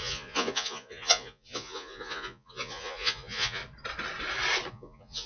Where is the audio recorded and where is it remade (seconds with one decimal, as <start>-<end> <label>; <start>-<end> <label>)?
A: 0.0-3.6 remade; 3.6-4.7 recorded; 4.7-5.3 remade